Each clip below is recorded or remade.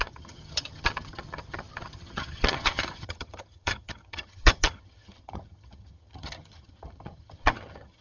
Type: remade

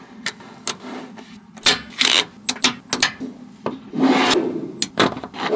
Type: recorded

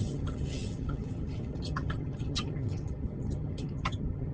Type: remade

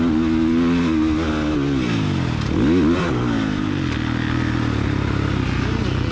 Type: recorded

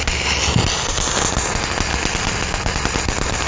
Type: recorded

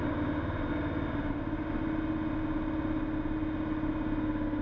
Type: recorded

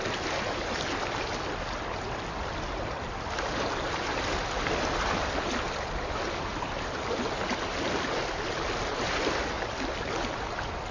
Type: recorded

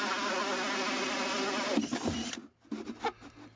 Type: recorded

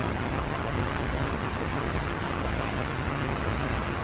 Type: remade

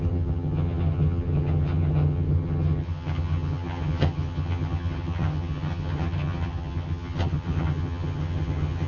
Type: remade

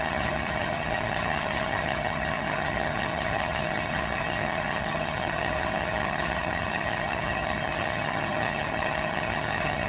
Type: remade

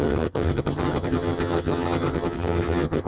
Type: remade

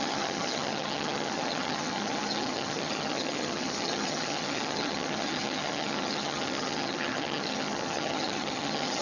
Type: remade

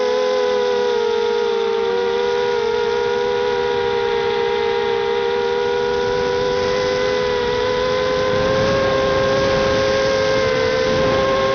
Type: recorded